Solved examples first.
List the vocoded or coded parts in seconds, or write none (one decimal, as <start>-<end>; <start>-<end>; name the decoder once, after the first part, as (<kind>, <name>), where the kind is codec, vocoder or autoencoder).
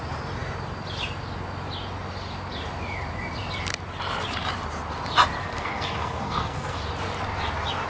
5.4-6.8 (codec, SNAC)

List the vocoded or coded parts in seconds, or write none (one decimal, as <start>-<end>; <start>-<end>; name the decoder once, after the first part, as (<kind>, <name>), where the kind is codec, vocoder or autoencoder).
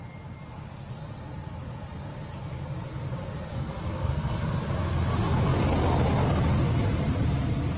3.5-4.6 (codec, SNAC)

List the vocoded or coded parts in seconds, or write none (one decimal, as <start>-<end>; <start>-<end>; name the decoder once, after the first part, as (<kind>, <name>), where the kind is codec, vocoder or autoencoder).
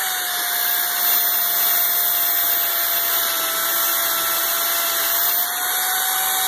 none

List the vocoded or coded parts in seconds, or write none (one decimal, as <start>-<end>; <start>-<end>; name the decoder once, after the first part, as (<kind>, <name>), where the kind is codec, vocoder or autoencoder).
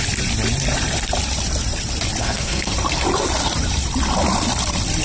2.2-2.7 (codec, SNAC)